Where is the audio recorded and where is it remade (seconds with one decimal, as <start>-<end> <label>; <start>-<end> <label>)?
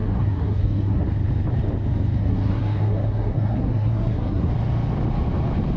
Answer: 0.0-1.0 remade; 1.0-2.2 recorded; 2.2-4.5 remade; 4.5-5.8 recorded